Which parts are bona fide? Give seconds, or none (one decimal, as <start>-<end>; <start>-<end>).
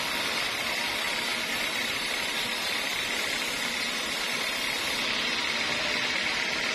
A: 0.0-1.3; 3.2-6.7